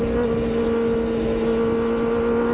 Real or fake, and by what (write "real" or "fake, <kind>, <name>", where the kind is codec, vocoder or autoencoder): real